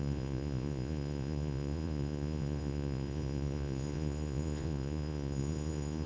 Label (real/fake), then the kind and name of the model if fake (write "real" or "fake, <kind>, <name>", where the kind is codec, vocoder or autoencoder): fake, vocoder, Vocos